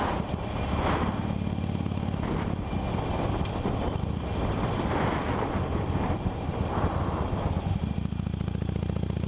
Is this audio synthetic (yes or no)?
no